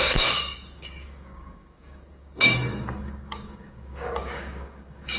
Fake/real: fake